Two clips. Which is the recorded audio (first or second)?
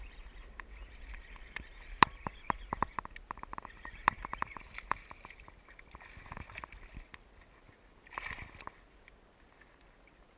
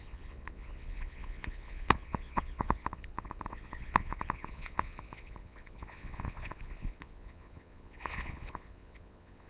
first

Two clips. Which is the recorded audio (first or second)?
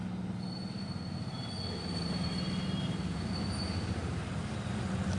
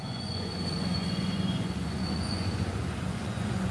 first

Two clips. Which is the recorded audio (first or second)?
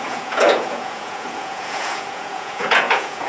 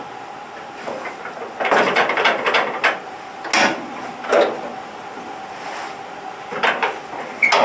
second